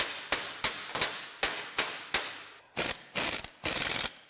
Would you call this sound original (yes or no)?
yes